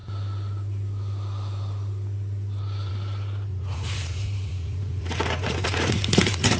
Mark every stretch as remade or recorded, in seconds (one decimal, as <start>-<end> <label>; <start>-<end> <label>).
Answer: 0.0-3.5 recorded; 3.5-6.6 remade